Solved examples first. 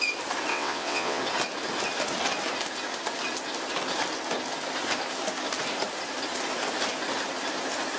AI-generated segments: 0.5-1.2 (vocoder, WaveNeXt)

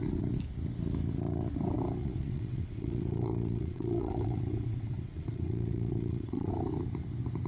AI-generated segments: 2.0-6.5 (vocoder, WaveNeXt)

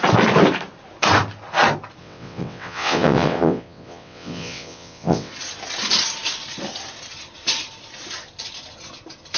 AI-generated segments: 2.0-5.3 (vocoder, WaveNeXt)

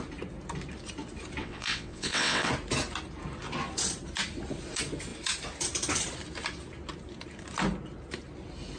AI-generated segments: 1.4-2.5 (vocoder, WaveNeXt)

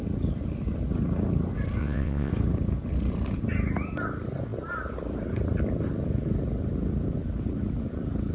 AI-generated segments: 1.8-2.3 (vocoder, WaveNeXt)

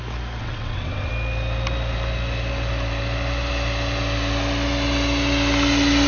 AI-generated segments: 0.4-1.1 (vocoder, WaveNeXt)